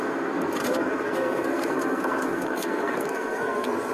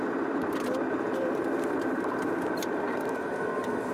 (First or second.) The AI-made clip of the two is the first